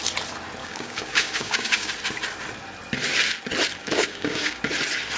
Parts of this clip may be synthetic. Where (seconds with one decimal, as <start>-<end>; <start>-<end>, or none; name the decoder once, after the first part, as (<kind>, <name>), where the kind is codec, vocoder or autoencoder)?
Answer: 0.6-1.9 (codec, DAC); 3.8-4.6

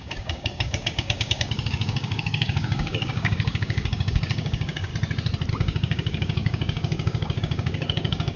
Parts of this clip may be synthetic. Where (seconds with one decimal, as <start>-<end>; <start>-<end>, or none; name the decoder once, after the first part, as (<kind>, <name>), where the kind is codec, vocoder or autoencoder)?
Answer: 0.0-4.9 (codec, DAC); 5.5-8.4

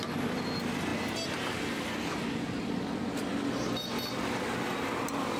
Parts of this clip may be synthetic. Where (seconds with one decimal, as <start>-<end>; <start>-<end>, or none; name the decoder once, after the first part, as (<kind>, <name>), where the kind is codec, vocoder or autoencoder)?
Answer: none

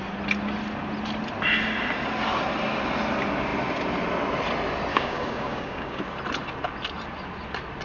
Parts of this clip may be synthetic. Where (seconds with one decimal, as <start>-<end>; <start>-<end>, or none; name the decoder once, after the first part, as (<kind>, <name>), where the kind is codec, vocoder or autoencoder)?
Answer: 4.9-6.0 (codec, DAC)

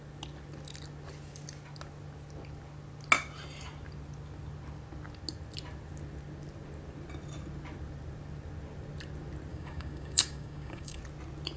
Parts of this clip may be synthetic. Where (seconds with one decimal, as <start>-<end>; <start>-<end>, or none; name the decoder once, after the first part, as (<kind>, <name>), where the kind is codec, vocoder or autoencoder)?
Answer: 9.5-11.0 (codec, DAC)